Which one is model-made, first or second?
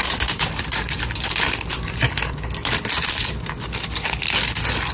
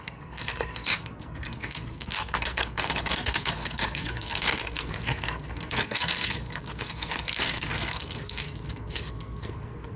second